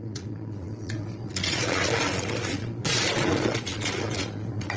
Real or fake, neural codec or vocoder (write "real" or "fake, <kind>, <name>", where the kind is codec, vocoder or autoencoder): fake, vocoder, Vocos